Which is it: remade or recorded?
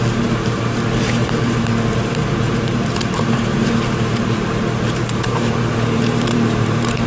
remade